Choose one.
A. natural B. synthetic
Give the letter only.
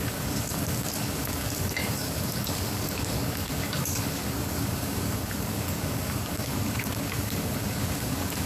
B